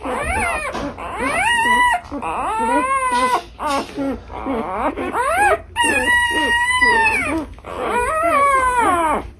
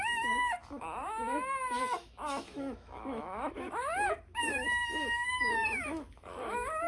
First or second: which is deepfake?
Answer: second